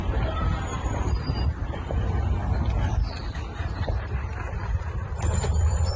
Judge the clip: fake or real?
fake